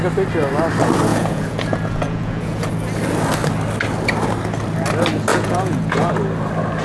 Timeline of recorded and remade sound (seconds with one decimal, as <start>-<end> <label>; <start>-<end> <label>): 0.0-1.1 recorded; 1.1-2.7 remade; 2.7-5.3 recorded; 5.3-6.1 remade; 6.1-6.8 recorded